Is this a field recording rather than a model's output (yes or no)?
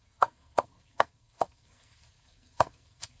no